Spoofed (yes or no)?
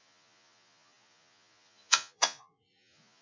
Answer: yes